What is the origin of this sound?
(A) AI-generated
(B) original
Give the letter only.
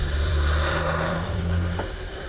A